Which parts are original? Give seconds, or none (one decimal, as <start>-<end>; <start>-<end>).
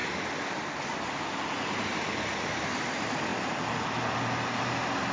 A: 1.2-1.9; 2.6-5.1